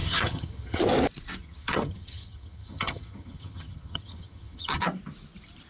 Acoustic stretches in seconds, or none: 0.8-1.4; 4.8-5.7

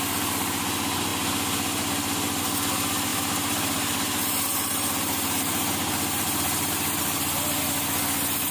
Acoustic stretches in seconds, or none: 0.0-3.1; 7.6-8.5